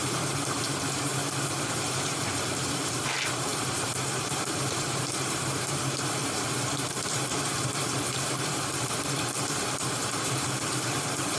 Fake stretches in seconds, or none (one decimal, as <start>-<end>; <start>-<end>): 0.0-1.1; 1.7-11.4